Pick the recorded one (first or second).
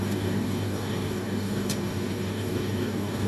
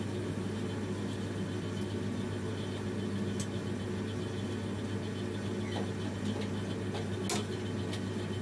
second